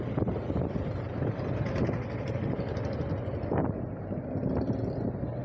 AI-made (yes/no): no